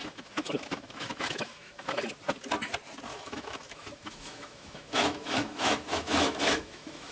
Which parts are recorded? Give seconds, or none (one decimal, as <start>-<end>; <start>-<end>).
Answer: 2.1-3.1